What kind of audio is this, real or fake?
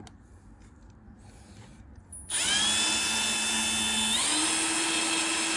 real